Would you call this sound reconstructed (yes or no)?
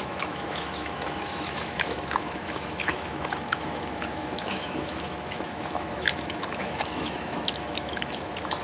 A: yes